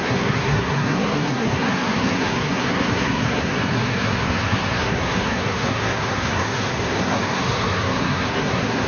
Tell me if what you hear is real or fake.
fake